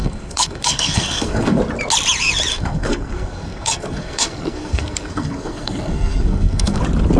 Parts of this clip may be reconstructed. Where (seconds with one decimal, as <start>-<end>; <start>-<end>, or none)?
0.0-1.6; 2.5-6.8